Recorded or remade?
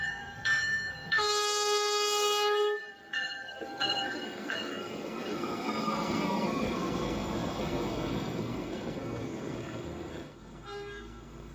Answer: remade